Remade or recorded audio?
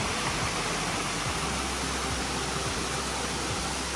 recorded